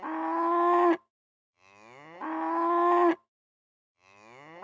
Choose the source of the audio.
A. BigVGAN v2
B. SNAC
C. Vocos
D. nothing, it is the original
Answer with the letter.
D